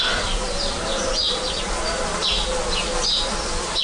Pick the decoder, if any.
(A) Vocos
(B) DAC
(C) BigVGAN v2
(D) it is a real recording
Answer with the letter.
D